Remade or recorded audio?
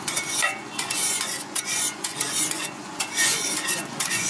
remade